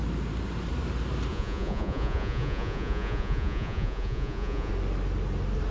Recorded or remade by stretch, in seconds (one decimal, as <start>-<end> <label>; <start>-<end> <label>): 0.0-1.3 recorded; 1.3-4.7 remade; 4.7-5.7 recorded